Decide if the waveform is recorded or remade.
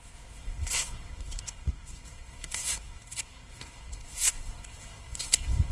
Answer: remade